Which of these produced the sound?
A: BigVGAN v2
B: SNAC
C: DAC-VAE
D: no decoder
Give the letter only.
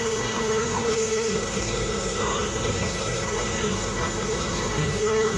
B